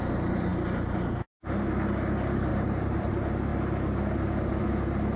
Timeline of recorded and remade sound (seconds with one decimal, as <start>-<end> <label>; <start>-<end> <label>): 0.0-2.5 recorded; 2.5-3.1 remade; 3.1-5.2 recorded